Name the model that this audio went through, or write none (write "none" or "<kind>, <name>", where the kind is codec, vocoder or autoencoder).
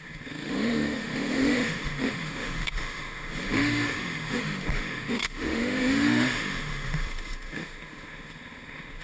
autoencoder, DAC-VAE